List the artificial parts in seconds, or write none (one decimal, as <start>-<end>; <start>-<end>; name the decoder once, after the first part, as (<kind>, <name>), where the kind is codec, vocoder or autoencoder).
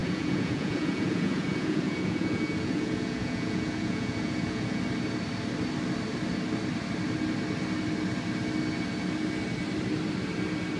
0.0-4.8 (vocoder, Vocos)